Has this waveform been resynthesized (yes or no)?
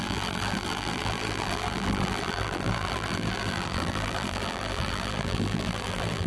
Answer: yes